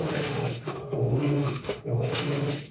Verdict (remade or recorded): remade